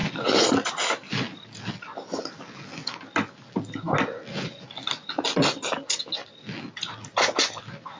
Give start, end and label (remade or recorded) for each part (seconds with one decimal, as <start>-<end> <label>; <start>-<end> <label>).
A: 0.0-8.0 recorded